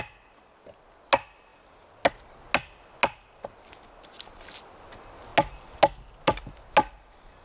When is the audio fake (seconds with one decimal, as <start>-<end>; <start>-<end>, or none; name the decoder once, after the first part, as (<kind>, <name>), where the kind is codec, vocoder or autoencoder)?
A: none